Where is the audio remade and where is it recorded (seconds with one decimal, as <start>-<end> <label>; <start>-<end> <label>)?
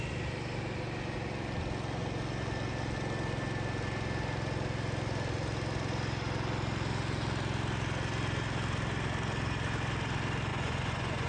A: 0.0-10.5 recorded; 10.5-11.3 remade